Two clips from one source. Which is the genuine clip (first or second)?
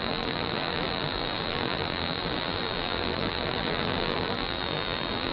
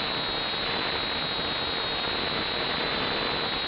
second